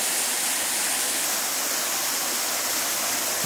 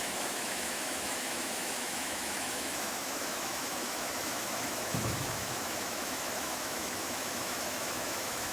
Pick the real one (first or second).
first